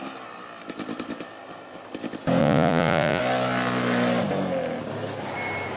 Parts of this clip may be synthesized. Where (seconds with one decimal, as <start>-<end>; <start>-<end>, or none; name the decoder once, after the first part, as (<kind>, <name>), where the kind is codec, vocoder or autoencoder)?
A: 2.4-3.2 (vocoder, Vocos)